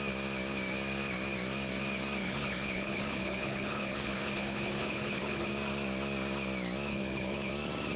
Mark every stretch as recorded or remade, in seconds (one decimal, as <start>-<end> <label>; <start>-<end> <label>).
0.0-2.2 recorded; 2.2-5.5 remade; 5.5-6.9 recorded; 6.9-7.5 remade; 7.5-8.0 recorded